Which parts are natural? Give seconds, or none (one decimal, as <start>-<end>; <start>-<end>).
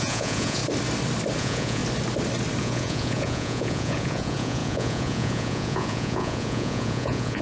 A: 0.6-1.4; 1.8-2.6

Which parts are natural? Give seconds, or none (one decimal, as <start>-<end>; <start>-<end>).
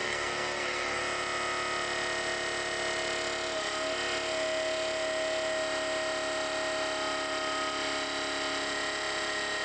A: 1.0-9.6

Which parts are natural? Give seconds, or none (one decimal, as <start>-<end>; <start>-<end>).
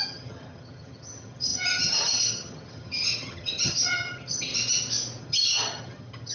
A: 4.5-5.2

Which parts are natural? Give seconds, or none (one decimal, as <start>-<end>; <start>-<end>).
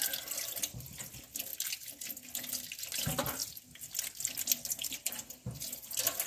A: 0.0-6.3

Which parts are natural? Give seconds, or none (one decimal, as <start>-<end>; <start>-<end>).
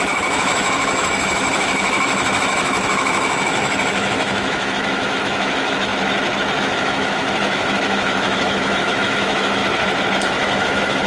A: 5.9-6.6; 9.6-10.2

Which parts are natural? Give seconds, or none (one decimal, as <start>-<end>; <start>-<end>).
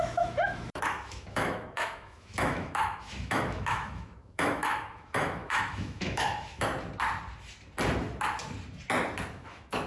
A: 6.7-9.3